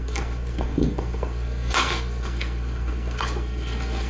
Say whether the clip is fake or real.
fake